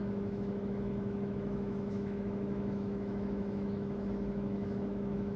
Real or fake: fake